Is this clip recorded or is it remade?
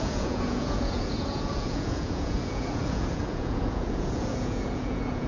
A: remade